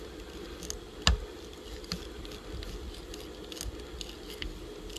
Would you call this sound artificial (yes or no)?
no